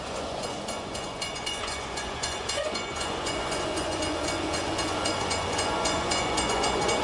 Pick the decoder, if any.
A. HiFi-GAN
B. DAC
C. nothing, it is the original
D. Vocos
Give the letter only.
D